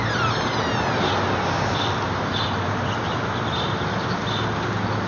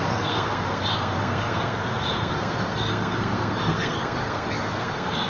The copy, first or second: second